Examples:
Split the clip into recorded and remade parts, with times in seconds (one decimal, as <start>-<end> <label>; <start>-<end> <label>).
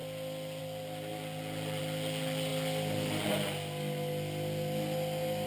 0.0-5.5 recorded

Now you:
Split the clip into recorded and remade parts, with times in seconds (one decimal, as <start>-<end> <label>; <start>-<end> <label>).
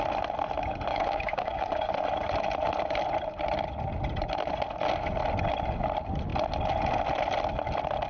0.0-0.9 recorded; 0.9-1.9 remade; 1.9-8.1 recorded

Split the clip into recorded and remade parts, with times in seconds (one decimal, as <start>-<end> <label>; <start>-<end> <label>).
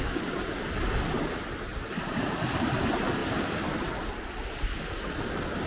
0.0-5.7 recorded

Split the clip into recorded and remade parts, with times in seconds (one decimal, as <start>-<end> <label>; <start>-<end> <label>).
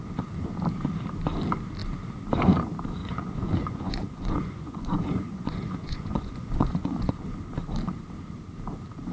0.0-3.0 recorded; 3.0-7.1 remade; 7.1-9.1 recorded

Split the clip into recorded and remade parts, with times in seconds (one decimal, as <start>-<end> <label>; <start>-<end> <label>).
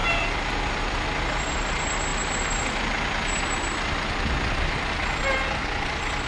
0.0-6.3 recorded